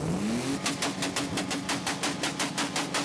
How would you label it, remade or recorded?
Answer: recorded